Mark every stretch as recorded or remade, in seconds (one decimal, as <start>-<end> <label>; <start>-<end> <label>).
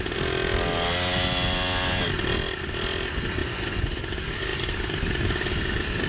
0.0-3.4 recorded; 3.4-4.0 remade; 4.0-6.1 recorded